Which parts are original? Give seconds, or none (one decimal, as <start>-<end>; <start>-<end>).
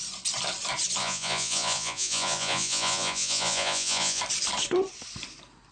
0.0-1.0; 4.2-5.7